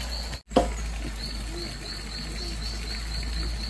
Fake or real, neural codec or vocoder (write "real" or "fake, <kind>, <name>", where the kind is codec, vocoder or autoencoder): real